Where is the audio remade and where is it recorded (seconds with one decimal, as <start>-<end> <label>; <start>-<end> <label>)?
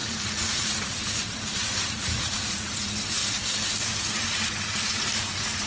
0.0-3.2 remade; 3.2-3.8 recorded; 3.8-5.7 remade